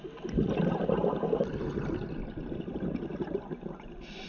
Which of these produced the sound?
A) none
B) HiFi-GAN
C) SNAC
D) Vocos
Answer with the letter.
A